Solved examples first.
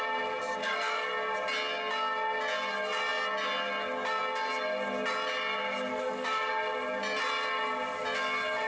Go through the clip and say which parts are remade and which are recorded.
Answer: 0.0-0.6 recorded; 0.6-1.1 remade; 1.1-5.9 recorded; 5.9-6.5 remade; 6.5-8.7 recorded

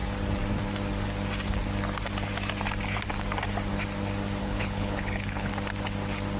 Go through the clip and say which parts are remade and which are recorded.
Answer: 0.0-4.4 recorded; 4.4-5.5 remade; 5.5-6.4 recorded

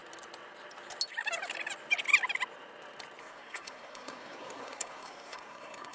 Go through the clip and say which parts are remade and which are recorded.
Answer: 0.0-3.2 recorded; 3.2-5.9 remade

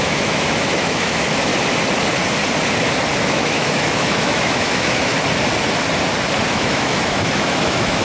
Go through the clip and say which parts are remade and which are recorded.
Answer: 0.0-1.5 remade; 1.5-3.3 recorded; 3.3-5.1 remade; 5.1-6.5 recorded; 6.5-8.0 remade